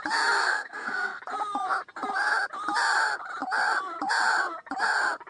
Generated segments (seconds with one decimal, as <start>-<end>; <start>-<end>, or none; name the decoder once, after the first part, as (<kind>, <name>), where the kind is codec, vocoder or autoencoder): 0.4-1.2 (codec, SNAC)

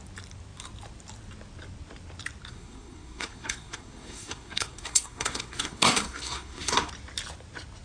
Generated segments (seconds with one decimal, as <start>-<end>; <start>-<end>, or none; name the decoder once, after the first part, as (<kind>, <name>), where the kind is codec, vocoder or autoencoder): 2.5-6.9 (codec, SNAC)

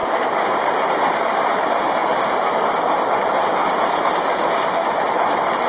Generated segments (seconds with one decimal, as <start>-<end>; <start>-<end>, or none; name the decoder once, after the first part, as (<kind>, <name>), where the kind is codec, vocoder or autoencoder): 0.6-3.6 (vocoder, BigVGAN v2); 5.0-5.7